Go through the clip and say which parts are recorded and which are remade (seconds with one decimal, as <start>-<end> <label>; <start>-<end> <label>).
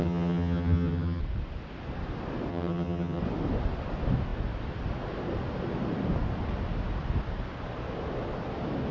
0.0-1.2 remade; 1.2-2.5 recorded; 2.5-3.2 remade; 3.2-8.9 recorded